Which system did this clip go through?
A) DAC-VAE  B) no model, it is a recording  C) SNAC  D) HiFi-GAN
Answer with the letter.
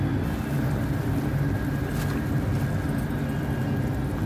B